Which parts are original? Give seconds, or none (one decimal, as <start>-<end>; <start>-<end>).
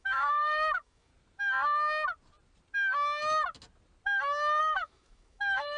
1.1-4.6